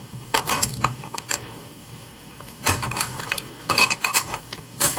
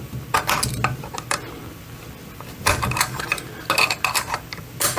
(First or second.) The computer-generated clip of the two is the first